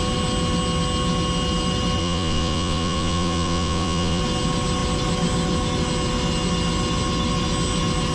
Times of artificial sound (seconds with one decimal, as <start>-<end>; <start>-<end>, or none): 2.0-4.2

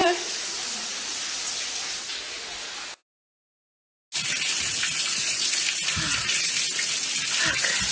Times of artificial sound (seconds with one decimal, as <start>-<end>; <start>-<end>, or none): 0.0-1.8

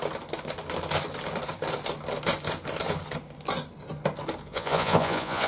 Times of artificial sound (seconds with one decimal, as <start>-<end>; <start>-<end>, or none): 4.5-5.5